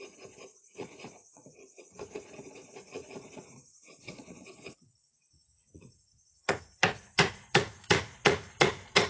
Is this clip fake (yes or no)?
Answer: yes